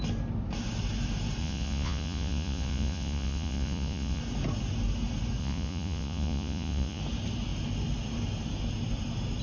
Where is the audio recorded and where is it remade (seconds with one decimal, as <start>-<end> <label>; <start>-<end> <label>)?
0.0-1.4 recorded; 1.4-4.2 remade; 4.2-5.4 recorded; 5.4-7.0 remade; 7.0-9.4 recorded